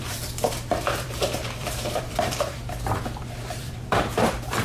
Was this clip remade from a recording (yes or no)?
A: yes